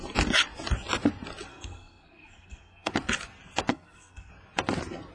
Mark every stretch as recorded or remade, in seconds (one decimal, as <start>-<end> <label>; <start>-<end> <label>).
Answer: 0.0-1.5 recorded; 1.5-2.9 remade; 2.9-3.7 recorded; 3.7-4.3 remade; 4.3-5.1 recorded

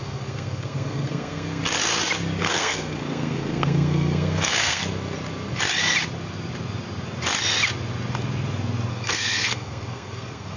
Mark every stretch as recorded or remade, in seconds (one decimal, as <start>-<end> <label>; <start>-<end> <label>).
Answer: 0.0-1.6 remade; 1.6-2.4 recorded; 2.4-4.8 remade; 4.8-8.9 recorded; 8.9-10.6 remade

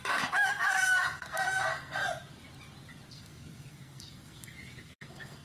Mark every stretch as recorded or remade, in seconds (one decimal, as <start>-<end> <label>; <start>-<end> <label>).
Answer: 0.0-2.0 remade; 2.0-3.1 recorded; 3.1-5.4 remade

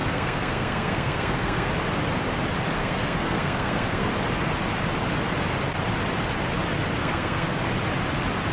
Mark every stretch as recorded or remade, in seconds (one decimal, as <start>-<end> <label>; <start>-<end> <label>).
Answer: 0.0-1.7 remade; 1.7-2.8 recorded; 2.8-4.1 remade; 4.1-7.0 recorded; 7.0-7.6 remade; 7.6-8.5 recorded

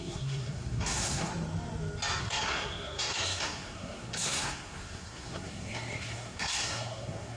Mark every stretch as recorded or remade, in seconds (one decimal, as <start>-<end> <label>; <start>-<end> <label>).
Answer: 0.0-1.3 remade; 1.3-2.2 recorded; 2.2-7.4 remade

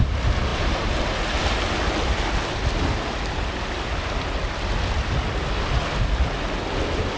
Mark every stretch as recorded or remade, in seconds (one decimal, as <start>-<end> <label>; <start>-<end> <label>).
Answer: 0.0-7.2 recorded

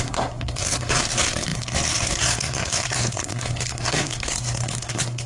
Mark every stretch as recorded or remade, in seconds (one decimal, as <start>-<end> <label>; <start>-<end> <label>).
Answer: 0.0-5.3 remade